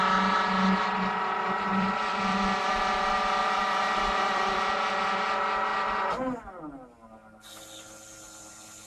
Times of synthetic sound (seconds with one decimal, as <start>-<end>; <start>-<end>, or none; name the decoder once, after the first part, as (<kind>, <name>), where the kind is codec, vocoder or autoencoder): 1.7-2.7 (vocoder, BigVGAN v2); 3.4-4.9